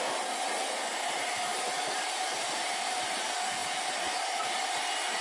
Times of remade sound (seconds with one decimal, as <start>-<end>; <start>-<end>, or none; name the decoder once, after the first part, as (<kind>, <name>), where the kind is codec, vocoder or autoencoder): 1.5-3.2 (vocoder, BigVGAN v2)